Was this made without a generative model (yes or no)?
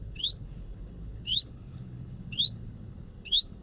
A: no